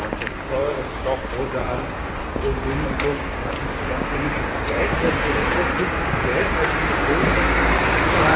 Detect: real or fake fake